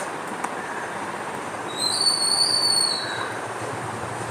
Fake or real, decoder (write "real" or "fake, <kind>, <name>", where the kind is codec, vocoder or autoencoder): fake, vocoder, BigVGAN v2